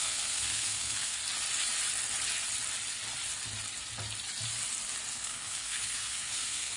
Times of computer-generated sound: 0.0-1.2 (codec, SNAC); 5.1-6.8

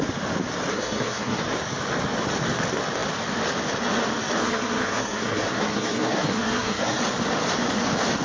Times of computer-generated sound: 0.7-1.4 (codec, SNAC); 4.4-7.0

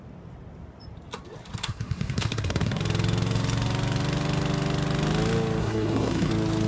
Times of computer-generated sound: 1.6-2.8 (codec, SNAC); 5.6-6.3

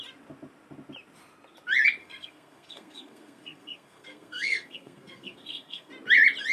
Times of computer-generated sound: 2.0-5.9 (codec, SNAC)

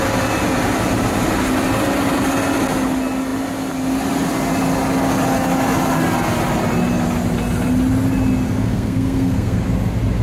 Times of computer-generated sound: 8.6-9.6 (codec, SNAC)

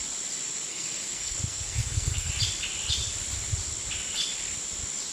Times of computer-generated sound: 0.7-2.3 (codec, SNAC)

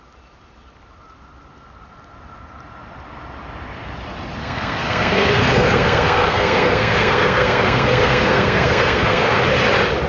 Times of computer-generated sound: 4.4-9.4 (codec, SNAC)